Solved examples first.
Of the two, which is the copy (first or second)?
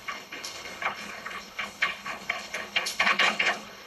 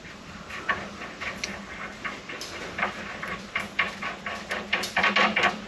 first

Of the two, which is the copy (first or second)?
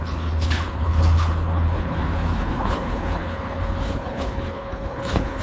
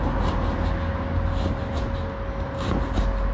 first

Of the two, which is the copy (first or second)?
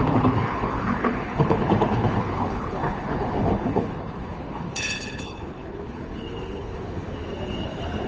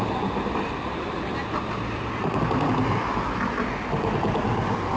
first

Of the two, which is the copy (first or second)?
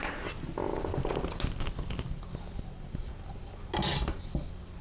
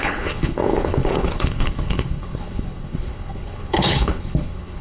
second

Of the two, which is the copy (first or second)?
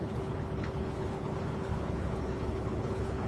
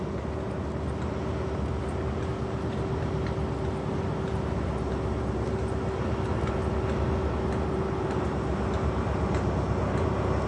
first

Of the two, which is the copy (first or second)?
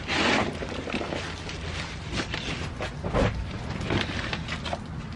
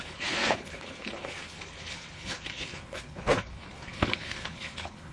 second